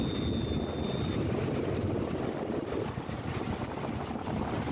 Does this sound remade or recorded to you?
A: recorded